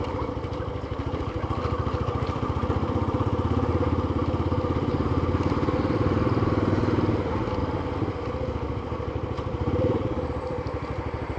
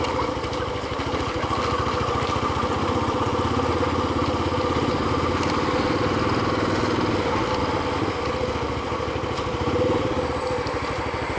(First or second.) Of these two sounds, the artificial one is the first